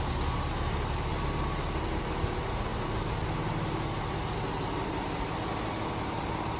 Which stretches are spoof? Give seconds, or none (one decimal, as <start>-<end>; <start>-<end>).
none

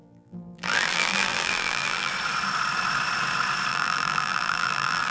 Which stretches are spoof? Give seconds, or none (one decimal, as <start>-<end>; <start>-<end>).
0.0-2.1; 3.7-5.1

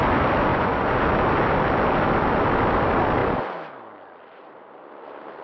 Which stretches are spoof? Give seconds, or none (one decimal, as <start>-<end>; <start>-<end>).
0.5-1.0

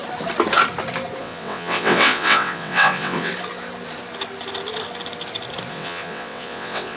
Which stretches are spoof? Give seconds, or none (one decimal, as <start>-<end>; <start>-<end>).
1.2-3.3; 5.7-7.0

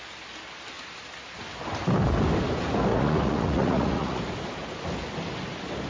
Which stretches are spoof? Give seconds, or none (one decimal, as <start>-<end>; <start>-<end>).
2.9-4.2

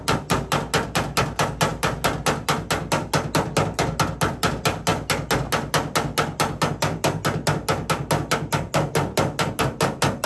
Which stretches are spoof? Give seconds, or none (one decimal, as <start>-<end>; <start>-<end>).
none

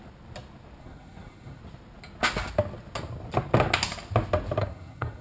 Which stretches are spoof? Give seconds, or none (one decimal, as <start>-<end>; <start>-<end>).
0.8-1.6; 4.6-5.2

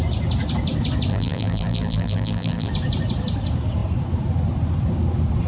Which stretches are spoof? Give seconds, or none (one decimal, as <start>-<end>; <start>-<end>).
1.1-2.7